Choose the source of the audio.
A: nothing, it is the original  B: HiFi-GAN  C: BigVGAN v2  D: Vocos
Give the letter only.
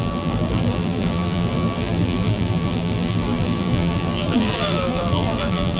C